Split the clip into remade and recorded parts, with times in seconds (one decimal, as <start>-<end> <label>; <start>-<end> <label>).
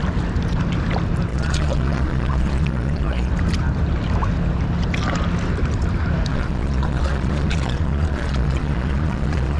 0.0-1.3 recorded; 1.3-3.3 remade; 3.3-6.3 recorded; 6.3-9.6 remade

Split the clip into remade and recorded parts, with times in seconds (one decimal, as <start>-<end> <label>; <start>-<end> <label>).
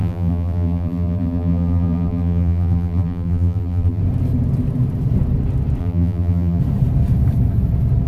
0.0-4.0 remade; 4.0-5.8 recorded; 5.8-6.6 remade; 6.6-8.1 recorded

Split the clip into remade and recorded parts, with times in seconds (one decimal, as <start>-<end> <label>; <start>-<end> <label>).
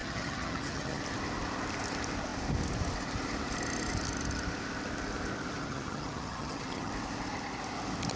0.0-1.0 remade; 1.0-5.6 recorded; 5.6-6.9 remade; 6.9-8.2 recorded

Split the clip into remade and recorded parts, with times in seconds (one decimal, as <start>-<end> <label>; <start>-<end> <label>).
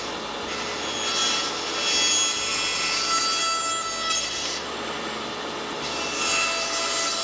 0.0-7.2 recorded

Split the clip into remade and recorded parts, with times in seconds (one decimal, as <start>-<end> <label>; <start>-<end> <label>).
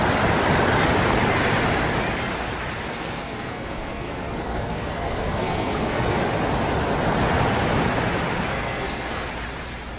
0.0-2.9 recorded; 2.9-6.2 remade; 6.2-8.5 recorded; 8.5-9.3 remade; 9.3-10.0 recorded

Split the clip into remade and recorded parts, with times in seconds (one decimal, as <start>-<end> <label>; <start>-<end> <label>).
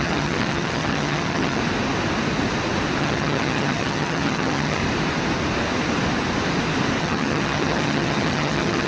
0.0-1.6 remade; 1.6-3.0 recorded; 3.0-4.8 remade; 4.8-7.0 recorded; 7.0-8.9 remade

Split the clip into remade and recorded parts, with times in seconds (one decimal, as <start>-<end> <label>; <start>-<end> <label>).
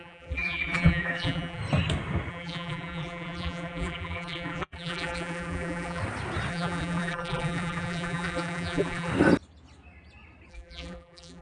0.0-1.6 remade; 1.6-2.3 recorded; 2.3-6.0 remade; 6.0-6.5 recorded; 6.5-9.1 remade; 9.1-10.5 recorded; 10.5-11.4 remade